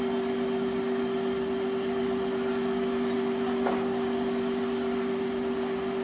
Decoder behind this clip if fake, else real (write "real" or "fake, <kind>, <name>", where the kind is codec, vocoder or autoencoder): real